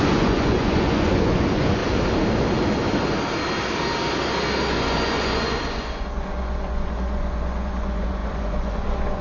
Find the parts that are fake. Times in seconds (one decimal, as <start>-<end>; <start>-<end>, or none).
0.0-1.8; 4.7-9.2